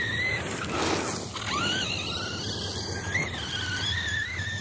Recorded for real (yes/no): yes